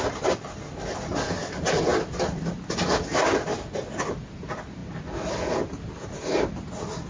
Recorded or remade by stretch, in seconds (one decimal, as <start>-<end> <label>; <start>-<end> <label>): 0.0-1.9 recorded; 1.9-2.8 remade; 2.8-7.1 recorded